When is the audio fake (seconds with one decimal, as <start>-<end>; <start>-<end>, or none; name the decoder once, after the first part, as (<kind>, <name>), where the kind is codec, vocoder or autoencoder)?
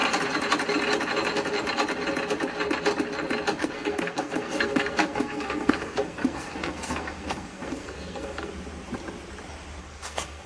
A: 3.6-8.5 (codec, SNAC); 9.8-10.5